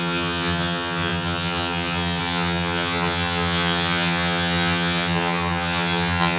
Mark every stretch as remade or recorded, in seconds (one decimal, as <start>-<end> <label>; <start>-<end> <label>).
0.0-6.4 remade